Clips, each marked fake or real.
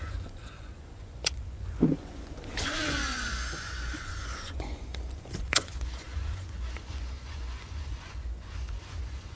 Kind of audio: fake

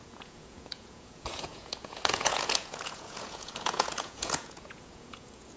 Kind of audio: fake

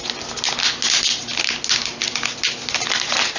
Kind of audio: real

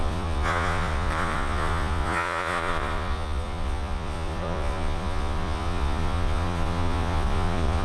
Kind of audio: fake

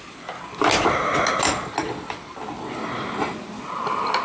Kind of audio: real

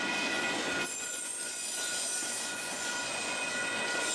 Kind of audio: fake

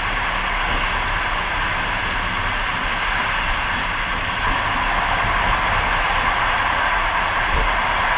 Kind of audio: real